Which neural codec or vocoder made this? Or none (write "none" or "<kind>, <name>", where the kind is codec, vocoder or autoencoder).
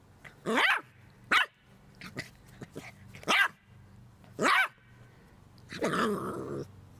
none